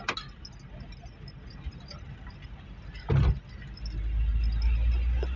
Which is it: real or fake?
real